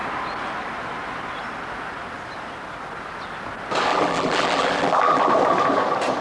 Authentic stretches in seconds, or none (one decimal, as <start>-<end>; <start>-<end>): 0.0-3.9; 5.3-6.2